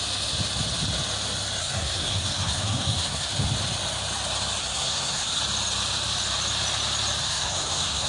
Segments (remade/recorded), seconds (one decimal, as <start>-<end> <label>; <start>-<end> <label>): 0.0-1.6 recorded; 1.6-3.3 remade; 3.3-4.6 recorded; 4.6-5.4 remade; 5.4-7.2 recorded; 7.2-8.1 remade